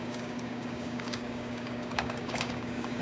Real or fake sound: fake